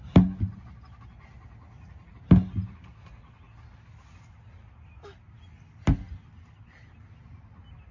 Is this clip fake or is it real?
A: real